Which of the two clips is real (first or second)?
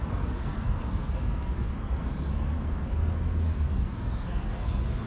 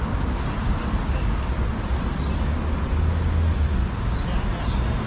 second